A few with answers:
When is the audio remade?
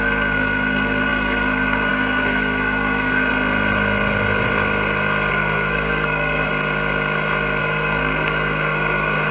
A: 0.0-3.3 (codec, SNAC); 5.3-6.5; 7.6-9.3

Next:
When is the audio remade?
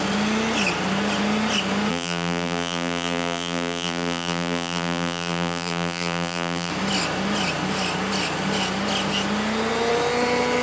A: 1.9-6.7 (vocoder, BigVGAN v2)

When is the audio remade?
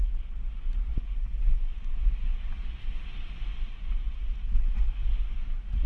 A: 4.8-5.9 (vocoder, BigVGAN v2)